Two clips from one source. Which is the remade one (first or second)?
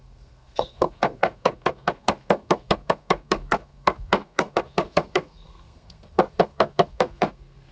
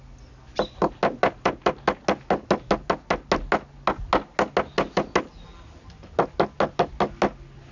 first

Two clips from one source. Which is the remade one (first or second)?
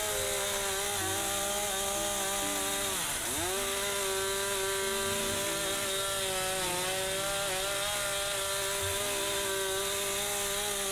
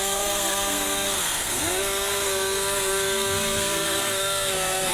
second